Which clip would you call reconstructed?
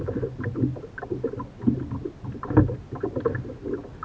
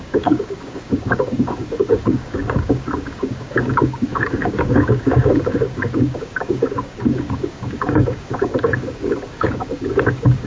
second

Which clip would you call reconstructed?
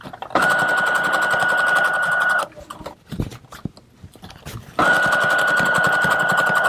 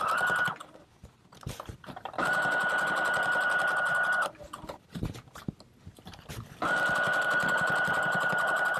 second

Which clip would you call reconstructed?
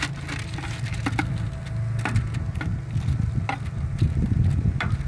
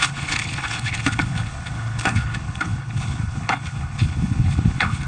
second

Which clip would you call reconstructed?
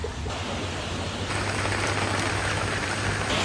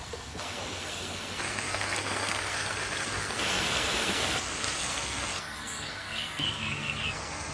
second